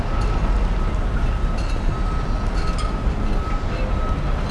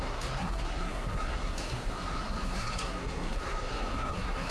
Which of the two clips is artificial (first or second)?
second